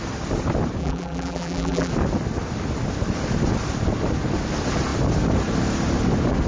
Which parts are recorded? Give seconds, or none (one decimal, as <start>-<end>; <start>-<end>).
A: 0.0-0.8; 1.9-6.5